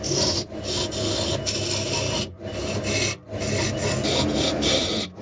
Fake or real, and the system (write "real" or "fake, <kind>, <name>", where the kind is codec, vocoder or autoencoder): real